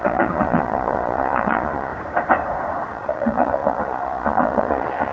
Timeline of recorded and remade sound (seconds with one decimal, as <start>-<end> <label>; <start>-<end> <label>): 0.0-1.9 remade; 1.9-2.9 recorded; 2.9-5.1 remade